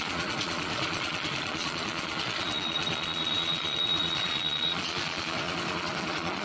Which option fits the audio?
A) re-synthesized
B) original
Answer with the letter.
A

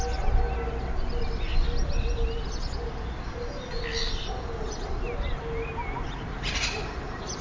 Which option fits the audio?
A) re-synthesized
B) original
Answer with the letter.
B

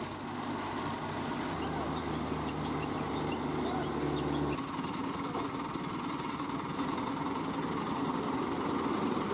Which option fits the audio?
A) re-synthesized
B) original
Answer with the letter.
B